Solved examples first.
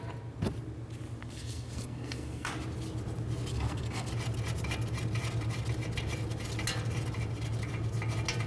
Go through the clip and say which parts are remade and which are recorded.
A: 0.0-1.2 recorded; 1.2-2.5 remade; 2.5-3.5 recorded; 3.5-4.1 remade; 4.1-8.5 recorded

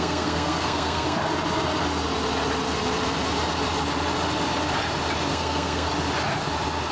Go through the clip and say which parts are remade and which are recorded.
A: 0.0-1.2 remade; 1.2-5.3 recorded; 5.3-5.9 remade; 5.9-6.9 recorded

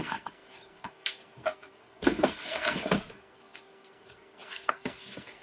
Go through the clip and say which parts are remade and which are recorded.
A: 0.0-5.4 remade

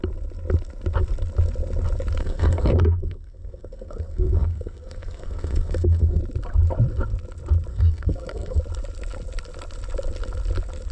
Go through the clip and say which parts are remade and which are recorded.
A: 0.0-2.2 recorded; 2.2-6.2 remade; 6.2-7.7 recorded; 7.7-8.6 remade; 8.6-10.9 recorded

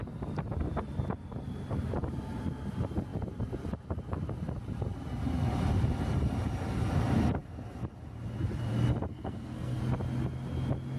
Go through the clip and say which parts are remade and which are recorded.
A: 0.0-9.1 recorded; 9.1-9.8 remade; 9.8-11.0 recorded

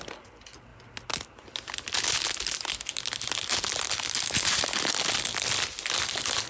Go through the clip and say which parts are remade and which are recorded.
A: 0.0-6.5 recorded

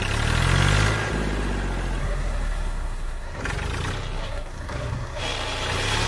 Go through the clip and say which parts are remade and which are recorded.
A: 0.0-2.0 recorded; 2.0-3.4 remade; 3.4-4.2 recorded; 4.2-5.2 remade; 5.2-6.1 recorded

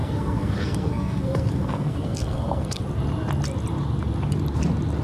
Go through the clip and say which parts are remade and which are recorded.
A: 0.0-2.8 remade; 2.8-5.0 recorded